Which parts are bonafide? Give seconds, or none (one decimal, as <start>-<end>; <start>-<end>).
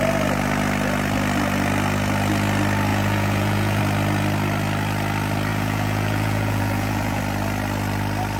0.0-2.9; 3.8-5.5; 7.2-8.4